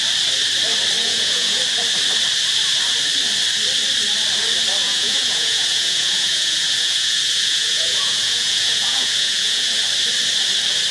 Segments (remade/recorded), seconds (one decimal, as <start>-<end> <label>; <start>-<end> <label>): 0.0-1.0 recorded; 1.0-1.6 remade; 1.6-4.8 recorded; 4.8-9.8 remade; 9.8-10.9 recorded

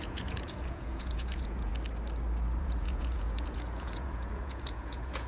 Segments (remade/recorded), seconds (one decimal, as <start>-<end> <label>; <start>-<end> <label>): 0.0-1.7 remade; 1.7-2.6 recorded; 2.6-5.3 remade

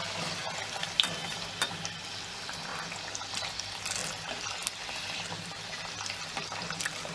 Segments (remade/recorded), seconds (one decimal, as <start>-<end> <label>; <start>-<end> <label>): 0.0-7.1 recorded

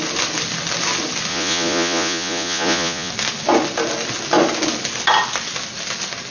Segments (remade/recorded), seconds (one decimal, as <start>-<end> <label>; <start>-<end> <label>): 0.0-1.3 recorded; 1.3-3.1 remade; 3.1-6.3 recorded